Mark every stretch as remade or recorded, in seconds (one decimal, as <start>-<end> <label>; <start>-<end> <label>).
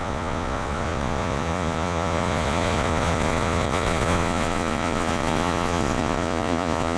0.0-7.0 remade